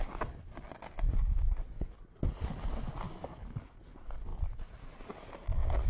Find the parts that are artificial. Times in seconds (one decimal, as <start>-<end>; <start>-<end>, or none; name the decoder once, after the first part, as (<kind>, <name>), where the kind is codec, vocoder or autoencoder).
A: none